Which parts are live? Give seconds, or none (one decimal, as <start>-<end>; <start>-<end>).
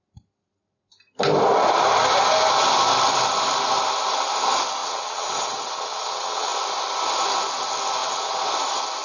0.0-4.8; 6.5-8.0; 8.5-9.0